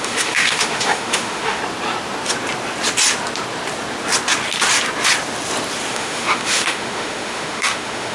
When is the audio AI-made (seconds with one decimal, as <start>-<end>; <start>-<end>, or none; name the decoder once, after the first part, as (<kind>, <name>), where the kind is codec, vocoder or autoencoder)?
0.0-1.6 (autoencoder, DAC-VAE); 5.9-8.1